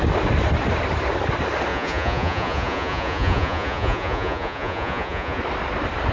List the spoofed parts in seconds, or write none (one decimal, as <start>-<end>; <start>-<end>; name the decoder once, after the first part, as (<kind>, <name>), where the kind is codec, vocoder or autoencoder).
1.7-5.4 (vocoder, Vocos)